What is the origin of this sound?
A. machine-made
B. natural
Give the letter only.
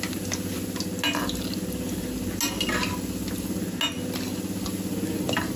B